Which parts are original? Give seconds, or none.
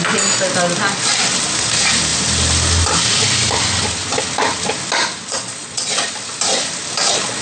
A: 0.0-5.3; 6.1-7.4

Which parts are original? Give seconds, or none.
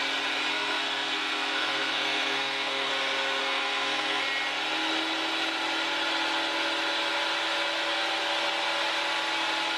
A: 0.0-0.5; 2.9-3.4; 4.2-9.8